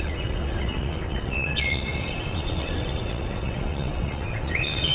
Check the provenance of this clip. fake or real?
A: fake